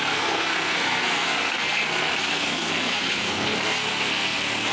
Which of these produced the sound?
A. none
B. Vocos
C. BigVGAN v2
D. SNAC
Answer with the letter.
D